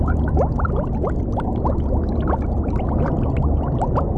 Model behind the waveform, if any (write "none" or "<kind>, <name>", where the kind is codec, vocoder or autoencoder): none